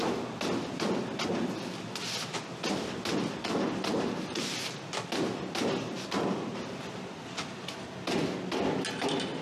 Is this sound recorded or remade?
recorded